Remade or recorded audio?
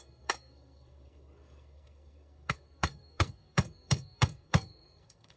remade